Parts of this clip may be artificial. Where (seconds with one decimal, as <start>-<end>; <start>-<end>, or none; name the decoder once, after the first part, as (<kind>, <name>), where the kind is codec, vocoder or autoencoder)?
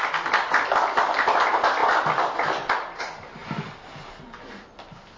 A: none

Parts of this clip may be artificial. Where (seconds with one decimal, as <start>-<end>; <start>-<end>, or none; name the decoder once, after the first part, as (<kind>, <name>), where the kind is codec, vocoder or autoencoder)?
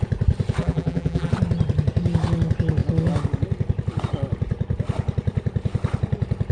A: 0.6-1.3 (vocoder, BigVGAN v2)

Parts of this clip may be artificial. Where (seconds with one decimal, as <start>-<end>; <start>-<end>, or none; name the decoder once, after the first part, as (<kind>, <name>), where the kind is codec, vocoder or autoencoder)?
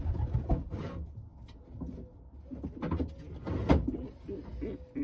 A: none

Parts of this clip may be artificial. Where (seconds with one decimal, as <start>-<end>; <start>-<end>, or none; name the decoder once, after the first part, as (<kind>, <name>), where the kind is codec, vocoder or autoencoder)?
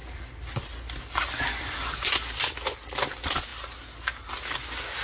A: 0.0-2.4 (vocoder, BigVGAN v2)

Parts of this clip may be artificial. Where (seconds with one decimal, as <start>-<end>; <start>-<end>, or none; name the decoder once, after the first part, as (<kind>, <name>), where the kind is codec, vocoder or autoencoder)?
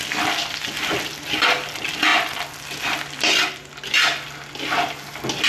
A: none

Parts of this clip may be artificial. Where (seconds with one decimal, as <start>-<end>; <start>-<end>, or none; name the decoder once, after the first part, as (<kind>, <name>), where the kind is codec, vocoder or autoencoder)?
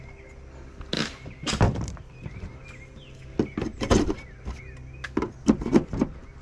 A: 2.2-3.2 (vocoder, BigVGAN v2); 3.7-4.6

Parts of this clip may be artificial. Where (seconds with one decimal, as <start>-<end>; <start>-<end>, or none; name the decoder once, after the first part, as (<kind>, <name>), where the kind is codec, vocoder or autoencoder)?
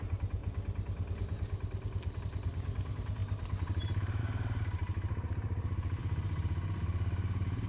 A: 0.0-0.4 (vocoder, BigVGAN v2); 2.2-7.7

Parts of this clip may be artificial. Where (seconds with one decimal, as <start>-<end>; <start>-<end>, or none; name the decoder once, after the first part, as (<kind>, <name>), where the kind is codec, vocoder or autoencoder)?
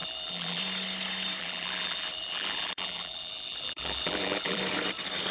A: 0.0-0.6 (vocoder, BigVGAN v2); 1.4-4.6